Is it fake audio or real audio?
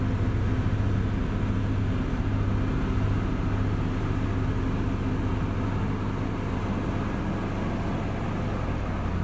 real